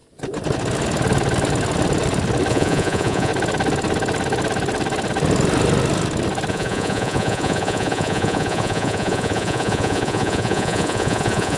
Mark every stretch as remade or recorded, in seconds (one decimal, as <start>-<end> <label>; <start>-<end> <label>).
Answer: 0.0-2.5 recorded; 2.5-3.3 remade; 3.3-6.5 recorded; 6.5-11.6 remade